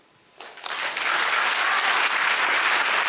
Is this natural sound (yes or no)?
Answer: yes